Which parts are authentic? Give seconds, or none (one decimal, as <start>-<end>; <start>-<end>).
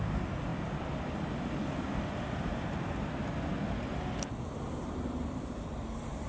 0.0-6.3